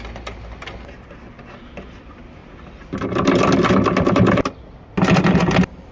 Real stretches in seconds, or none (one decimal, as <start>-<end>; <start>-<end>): 0.0-5.9